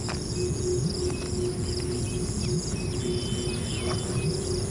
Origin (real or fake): real